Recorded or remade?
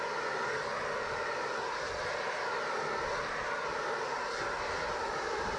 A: recorded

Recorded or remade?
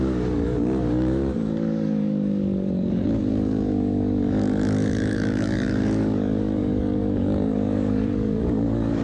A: remade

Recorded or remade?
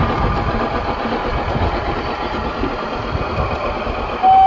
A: recorded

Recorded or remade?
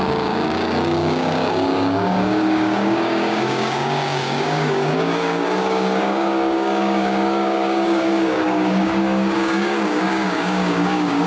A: remade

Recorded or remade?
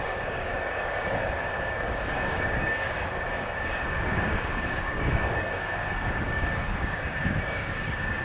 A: remade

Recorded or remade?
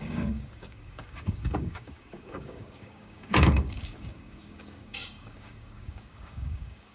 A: remade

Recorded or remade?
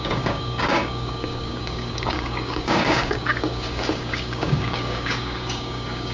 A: remade